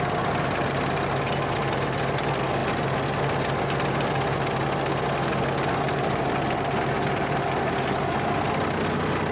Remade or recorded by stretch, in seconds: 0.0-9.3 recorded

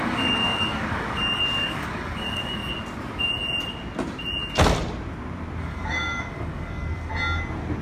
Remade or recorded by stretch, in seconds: 0.0-2.6 remade; 2.6-5.6 recorded; 5.6-7.1 remade; 7.1-7.8 recorded

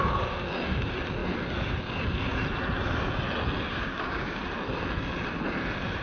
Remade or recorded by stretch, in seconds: 0.0-3.7 recorded; 3.7-4.4 remade; 4.4-6.0 recorded